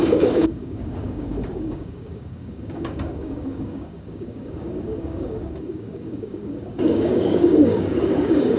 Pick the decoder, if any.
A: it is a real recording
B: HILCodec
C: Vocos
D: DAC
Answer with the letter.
D